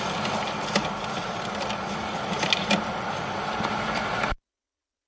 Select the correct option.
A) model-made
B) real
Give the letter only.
B